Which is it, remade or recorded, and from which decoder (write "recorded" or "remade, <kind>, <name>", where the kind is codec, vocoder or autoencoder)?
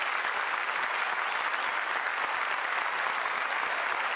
recorded